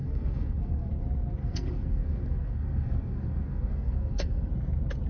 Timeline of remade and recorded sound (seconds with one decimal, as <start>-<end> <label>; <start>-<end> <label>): 0.0-0.9 remade; 0.9-1.4 recorded; 1.4-4.5 remade; 4.5-5.1 recorded